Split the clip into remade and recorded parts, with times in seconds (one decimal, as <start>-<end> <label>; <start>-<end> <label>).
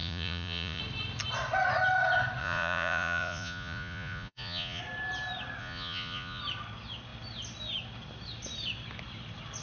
0.0-0.8 remade; 0.8-2.4 recorded; 2.4-4.8 remade; 4.8-5.6 recorded; 5.6-6.4 remade; 6.4-9.6 recorded